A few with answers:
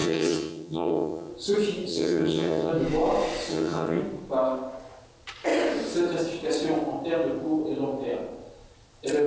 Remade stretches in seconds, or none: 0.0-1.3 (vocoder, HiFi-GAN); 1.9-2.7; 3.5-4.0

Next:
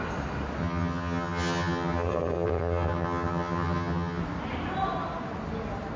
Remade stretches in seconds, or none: 0.6-4.2 (vocoder, HiFi-GAN)

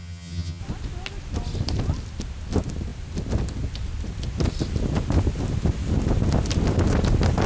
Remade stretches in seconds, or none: 0.0-0.6 (vocoder, HiFi-GAN)

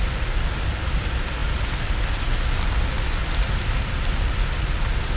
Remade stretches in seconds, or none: none

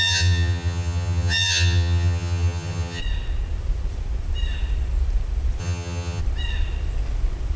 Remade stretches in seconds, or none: 0.0-3.0 (vocoder, HiFi-GAN); 5.6-6.2

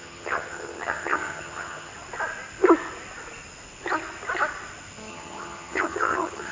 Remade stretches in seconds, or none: 0.0-1.9 (vocoder, HiFi-GAN); 5.1-6.5

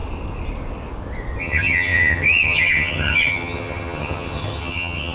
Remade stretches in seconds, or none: 1.4-5.1 (vocoder, HiFi-GAN)